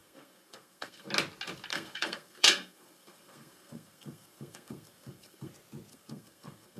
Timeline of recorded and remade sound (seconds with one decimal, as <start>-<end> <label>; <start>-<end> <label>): 0.0-1.1 remade; 1.1-1.7 recorded; 1.7-5.5 remade; 5.5-5.9 recorded; 5.9-6.8 remade